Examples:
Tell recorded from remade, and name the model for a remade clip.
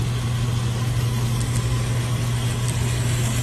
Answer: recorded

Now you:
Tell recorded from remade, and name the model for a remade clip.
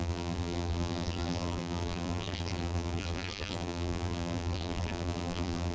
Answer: remade, vocoder, BigVGAN v2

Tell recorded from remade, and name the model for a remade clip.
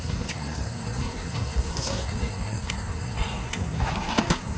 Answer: remade, codec, SNAC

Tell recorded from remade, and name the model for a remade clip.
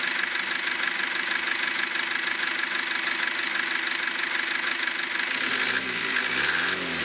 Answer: recorded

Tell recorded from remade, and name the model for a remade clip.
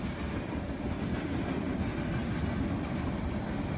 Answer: recorded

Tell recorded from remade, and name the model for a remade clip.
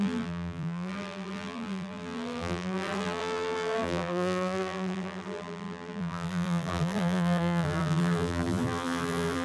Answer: remade, vocoder, BigVGAN v2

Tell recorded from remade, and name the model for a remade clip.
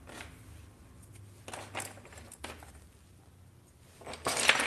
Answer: recorded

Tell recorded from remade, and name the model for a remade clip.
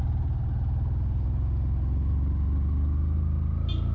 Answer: recorded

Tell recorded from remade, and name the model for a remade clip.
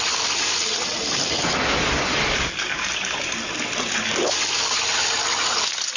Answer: recorded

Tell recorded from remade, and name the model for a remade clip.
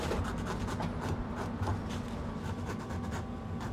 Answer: recorded